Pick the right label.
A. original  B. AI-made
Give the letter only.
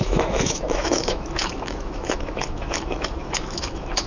B